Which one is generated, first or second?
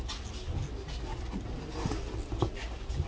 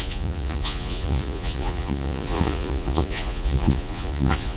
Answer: second